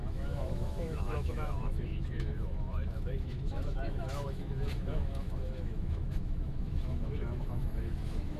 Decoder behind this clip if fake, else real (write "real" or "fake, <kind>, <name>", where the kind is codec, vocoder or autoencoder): fake, autoencoder, DAC-VAE